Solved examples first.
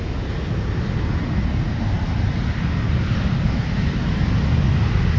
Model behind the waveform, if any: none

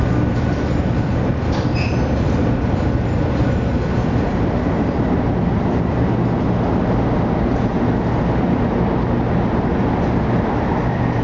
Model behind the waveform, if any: none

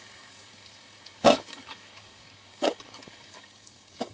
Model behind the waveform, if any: codec, DAC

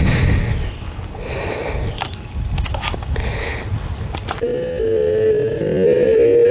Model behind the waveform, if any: none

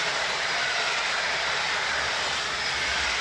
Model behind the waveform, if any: none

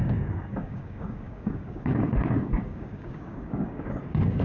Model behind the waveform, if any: codec, DAC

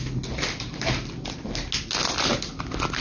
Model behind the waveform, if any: none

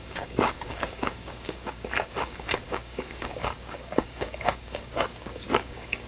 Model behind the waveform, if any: codec, DAC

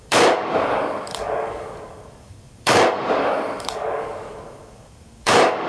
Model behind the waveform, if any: codec, DAC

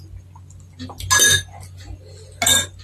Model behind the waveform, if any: none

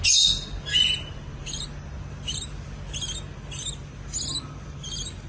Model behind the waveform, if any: none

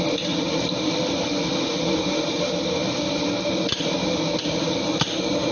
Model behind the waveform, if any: none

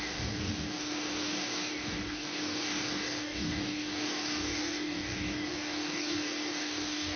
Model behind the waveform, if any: codec, DAC